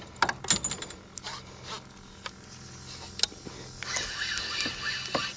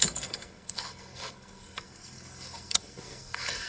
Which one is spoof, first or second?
second